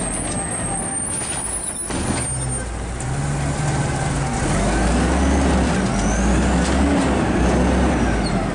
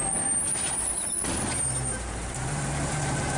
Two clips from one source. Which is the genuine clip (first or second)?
first